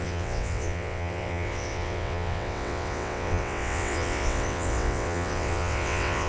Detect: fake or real fake